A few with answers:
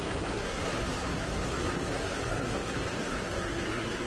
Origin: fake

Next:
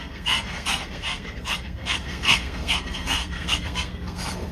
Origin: fake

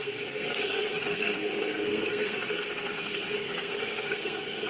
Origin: fake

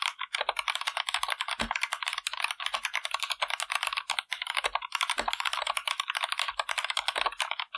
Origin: real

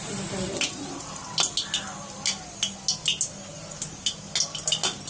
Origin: real